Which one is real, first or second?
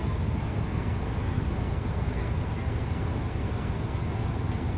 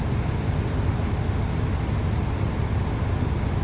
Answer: second